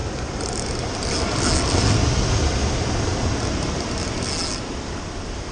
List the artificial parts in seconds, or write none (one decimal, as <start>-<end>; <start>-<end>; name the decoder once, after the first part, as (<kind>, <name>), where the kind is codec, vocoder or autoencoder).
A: none